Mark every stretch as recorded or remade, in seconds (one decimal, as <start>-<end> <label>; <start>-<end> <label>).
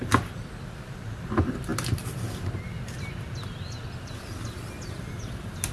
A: 0.0-5.7 recorded